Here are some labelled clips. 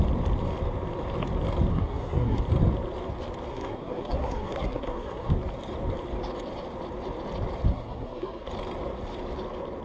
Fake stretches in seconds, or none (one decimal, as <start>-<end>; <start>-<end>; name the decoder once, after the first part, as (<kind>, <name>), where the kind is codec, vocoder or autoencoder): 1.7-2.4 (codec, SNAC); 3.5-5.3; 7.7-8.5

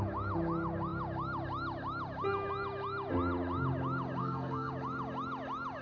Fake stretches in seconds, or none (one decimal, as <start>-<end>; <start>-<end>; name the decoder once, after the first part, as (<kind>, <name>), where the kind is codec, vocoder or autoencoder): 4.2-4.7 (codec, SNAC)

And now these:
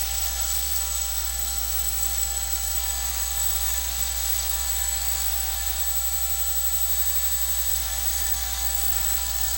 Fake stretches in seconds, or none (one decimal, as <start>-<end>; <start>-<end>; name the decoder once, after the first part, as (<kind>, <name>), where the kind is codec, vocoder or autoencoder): 0.0-5.8 (codec, SNAC); 7.7-9.6

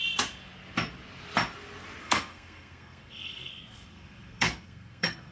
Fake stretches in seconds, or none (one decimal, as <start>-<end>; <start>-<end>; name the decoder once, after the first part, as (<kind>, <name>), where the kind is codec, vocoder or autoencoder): 2.0-5.3 (codec, SNAC)

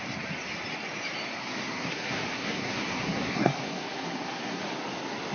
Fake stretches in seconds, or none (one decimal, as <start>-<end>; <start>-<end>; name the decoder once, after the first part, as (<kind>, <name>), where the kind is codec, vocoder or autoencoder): 1.4-4.6 (codec, SNAC)

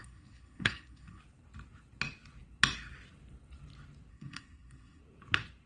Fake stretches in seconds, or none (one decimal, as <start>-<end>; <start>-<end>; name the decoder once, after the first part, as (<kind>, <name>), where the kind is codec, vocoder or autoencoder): 0.0-1.2 (codec, SNAC); 4.1-5.0

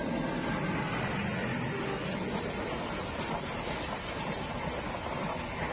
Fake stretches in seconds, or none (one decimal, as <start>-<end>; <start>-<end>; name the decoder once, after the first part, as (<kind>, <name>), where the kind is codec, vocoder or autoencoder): none